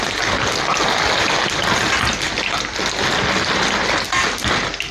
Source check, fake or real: real